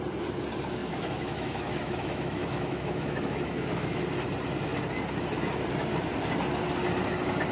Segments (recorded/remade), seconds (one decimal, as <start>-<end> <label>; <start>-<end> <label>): 0.0-0.8 recorded; 0.8-4.0 remade; 4.0-7.5 recorded